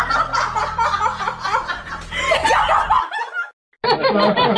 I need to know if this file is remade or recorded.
recorded